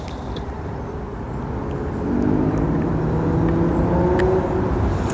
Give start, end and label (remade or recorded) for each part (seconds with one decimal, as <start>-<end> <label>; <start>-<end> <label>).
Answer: 0.0-5.1 recorded